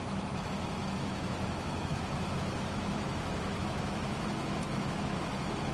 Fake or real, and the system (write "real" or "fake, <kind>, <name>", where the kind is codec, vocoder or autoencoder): fake, autoencoder, DAC-VAE